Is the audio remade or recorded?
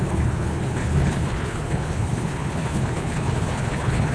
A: remade